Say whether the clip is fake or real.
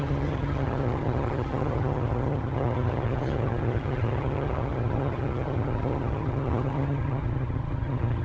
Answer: fake